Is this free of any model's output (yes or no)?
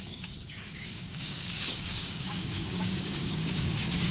no